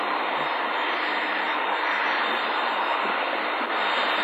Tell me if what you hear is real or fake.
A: real